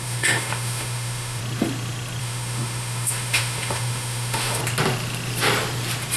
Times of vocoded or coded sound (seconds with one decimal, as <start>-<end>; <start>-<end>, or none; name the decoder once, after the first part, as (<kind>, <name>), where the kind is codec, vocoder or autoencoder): 0.0-1.4 (autoencoder, DAC-VAE); 2.2-4.6